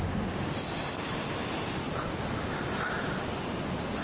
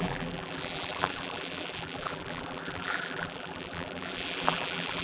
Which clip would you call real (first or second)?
first